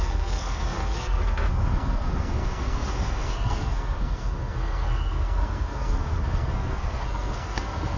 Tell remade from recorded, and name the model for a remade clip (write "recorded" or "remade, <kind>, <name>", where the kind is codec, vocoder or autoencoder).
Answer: remade, codec, SNAC